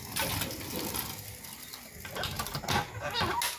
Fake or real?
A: real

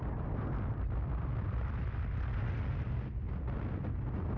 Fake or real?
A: real